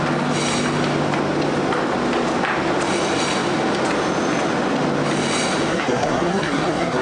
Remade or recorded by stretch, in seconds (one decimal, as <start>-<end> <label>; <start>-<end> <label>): 0.0-5.7 recorded; 5.7-7.0 remade